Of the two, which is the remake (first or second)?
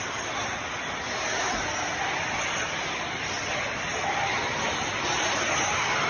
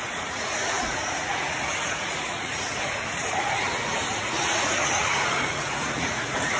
second